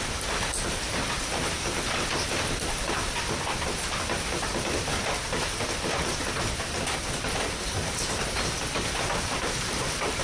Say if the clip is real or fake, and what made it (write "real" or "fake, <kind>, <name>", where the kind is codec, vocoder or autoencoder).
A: fake, vocoder, BigVGAN v2